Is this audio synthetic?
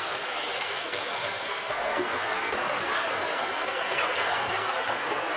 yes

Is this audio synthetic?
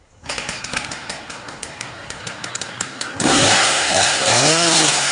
yes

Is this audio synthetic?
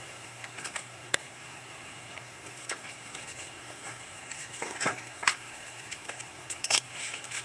yes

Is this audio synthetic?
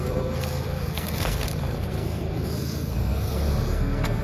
yes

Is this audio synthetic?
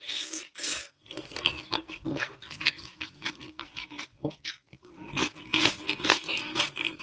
yes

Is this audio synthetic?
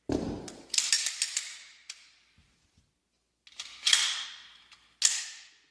no